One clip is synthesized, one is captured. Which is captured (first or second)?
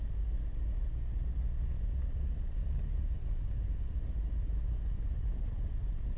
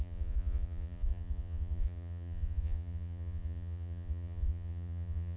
first